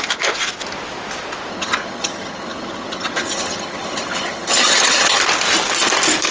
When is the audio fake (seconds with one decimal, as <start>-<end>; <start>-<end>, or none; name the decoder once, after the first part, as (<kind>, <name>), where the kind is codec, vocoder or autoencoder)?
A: 1.5-5.2 (vocoder, HiFi-GAN)